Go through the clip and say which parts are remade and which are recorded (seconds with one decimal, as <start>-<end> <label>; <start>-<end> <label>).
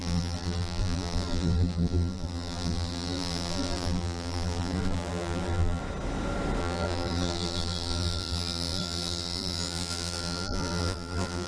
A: 0.0-5.8 remade; 5.8-6.6 recorded; 6.6-11.5 remade